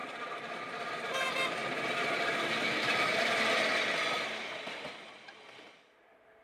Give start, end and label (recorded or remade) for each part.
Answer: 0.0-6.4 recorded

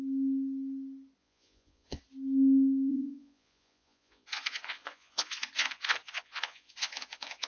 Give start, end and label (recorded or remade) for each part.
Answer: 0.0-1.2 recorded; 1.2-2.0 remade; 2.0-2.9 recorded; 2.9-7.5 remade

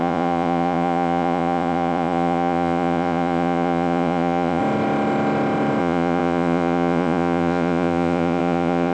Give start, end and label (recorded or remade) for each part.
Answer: 0.0-4.6 remade; 4.6-5.8 recorded; 5.8-8.9 remade

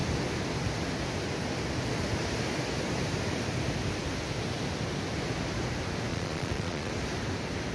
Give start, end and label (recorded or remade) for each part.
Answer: 0.0-6.1 recorded; 6.1-6.9 remade; 6.9-7.7 recorded

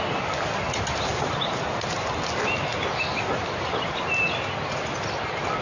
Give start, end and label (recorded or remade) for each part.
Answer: 0.0-5.6 recorded

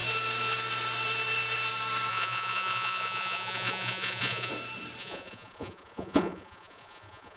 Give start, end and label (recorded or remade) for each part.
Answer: 0.0-2.1 recorded; 2.1-4.5 remade; 4.5-5.0 recorded; 5.0-7.4 remade

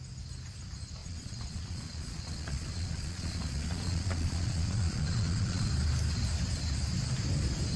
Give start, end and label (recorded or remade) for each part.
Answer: 0.0-1.0 recorded; 1.0-5.7 remade; 5.7-7.8 recorded